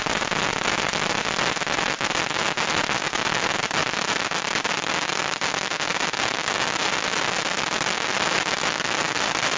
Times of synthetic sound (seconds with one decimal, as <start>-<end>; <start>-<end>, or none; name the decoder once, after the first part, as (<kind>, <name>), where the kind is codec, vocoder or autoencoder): none